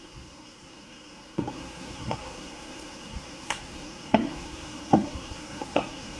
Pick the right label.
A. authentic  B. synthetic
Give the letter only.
B